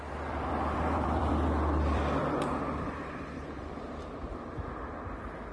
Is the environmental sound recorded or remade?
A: remade